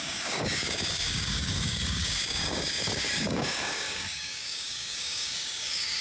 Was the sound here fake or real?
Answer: fake